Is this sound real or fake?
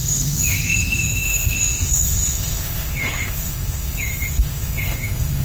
fake